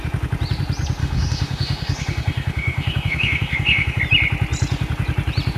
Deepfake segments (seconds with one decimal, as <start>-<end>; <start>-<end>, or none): 1.0-4.0